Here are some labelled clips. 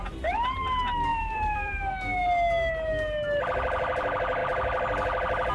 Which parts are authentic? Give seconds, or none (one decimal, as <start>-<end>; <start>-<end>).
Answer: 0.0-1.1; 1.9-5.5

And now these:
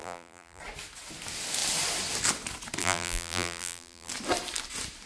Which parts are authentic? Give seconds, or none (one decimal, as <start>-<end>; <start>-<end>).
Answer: 0.6-2.8; 4.1-5.1

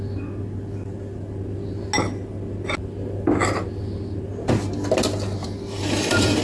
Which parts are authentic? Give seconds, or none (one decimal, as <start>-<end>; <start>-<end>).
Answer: 0.0-5.4

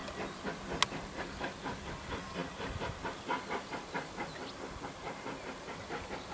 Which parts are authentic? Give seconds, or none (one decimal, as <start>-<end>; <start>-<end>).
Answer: 0.0-6.3

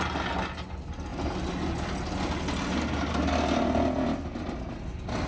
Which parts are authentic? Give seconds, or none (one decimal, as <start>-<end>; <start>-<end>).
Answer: 0.0-5.3